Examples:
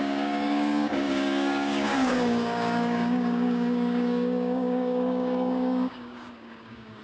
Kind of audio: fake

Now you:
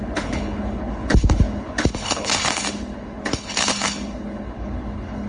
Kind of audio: fake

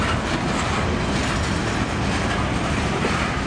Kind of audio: real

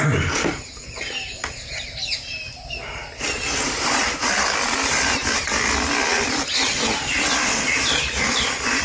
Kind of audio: real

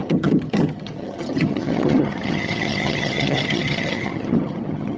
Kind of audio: fake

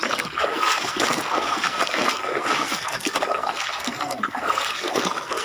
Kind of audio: fake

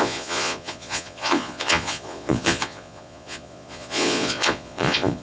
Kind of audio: fake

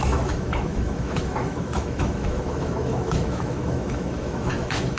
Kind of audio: fake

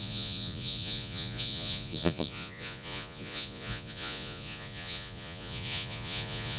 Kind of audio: fake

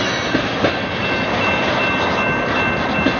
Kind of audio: real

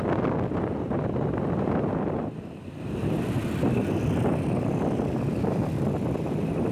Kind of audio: real